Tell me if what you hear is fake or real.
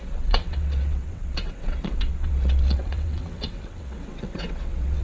fake